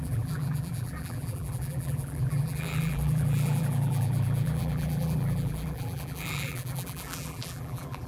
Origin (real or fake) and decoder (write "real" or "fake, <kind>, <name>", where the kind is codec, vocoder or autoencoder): fake, vocoder, BigVGAN v2